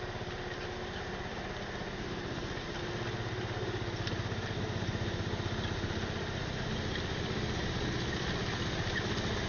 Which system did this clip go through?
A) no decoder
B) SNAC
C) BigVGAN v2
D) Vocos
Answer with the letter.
A